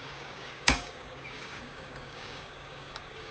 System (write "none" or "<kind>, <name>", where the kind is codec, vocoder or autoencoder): codec, DAC